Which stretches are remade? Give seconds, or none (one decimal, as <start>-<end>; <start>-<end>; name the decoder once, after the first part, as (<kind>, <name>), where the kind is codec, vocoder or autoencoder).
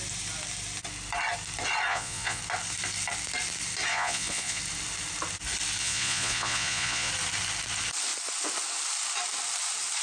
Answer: 1.9-2.4 (vocoder, Vocos); 3.9-4.6; 5.8-7.1